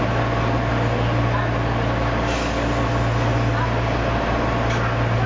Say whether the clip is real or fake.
real